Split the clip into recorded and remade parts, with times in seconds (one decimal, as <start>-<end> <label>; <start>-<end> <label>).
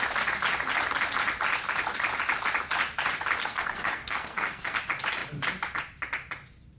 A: 0.0-3.4 recorded; 3.4-4.8 remade; 4.8-6.8 recorded